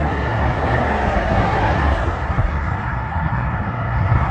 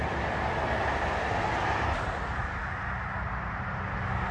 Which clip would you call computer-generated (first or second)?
first